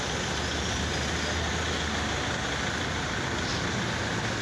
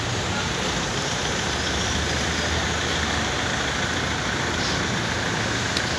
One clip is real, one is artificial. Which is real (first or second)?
first